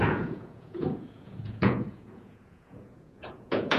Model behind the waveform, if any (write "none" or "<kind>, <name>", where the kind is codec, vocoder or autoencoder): vocoder, Vocos